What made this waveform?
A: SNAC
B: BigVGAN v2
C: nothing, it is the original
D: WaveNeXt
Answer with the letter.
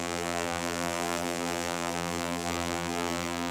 B